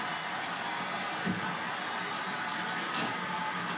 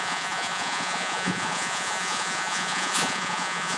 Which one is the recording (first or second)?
first